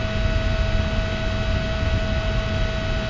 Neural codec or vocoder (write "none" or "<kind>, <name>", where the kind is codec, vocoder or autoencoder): none